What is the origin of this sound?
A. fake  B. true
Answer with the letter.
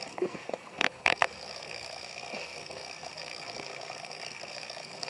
A